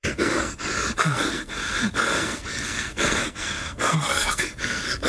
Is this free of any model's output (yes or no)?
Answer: no